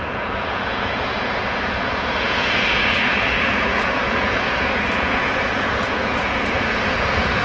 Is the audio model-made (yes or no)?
yes